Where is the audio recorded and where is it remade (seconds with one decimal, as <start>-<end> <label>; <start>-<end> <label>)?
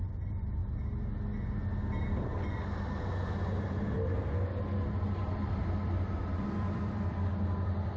0.0-0.6 remade; 0.6-5.4 recorded; 5.4-8.0 remade